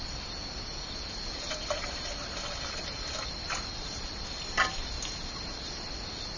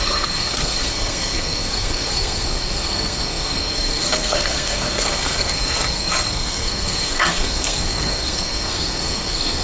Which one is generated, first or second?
second